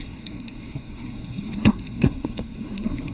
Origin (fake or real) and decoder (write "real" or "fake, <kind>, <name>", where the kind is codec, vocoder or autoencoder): fake, codec, SNAC